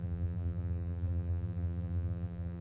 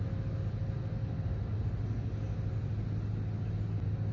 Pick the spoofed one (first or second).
first